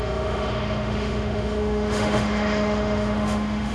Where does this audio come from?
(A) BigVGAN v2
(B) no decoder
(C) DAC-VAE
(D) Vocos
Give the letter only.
C